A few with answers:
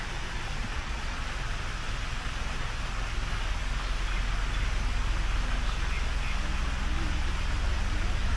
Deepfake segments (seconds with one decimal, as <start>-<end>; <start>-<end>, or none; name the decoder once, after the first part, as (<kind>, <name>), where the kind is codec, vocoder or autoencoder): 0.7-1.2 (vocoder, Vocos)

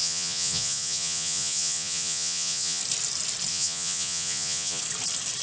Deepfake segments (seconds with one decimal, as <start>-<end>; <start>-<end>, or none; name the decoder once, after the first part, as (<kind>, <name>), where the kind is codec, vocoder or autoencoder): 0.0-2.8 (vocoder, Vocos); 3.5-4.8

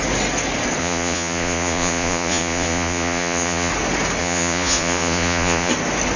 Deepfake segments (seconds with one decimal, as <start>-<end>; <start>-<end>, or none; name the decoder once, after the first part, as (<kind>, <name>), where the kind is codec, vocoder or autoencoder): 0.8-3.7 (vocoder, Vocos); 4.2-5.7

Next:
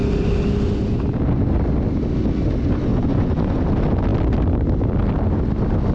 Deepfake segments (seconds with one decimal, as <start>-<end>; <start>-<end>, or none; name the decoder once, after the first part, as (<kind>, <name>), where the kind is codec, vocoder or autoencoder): 2.9-3.6 (vocoder, Vocos)

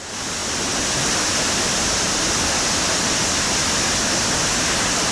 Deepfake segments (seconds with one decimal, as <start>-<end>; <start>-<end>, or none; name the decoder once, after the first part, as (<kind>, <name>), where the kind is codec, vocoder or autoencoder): none